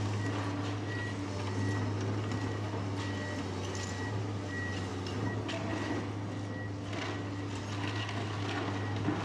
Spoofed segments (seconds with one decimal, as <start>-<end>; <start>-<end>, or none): none